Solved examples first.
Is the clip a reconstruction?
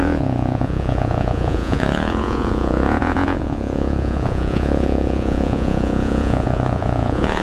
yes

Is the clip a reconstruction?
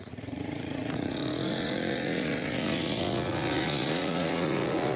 yes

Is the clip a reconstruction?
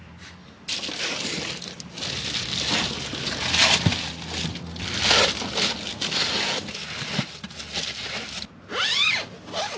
no